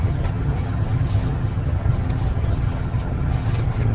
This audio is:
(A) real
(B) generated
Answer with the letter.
B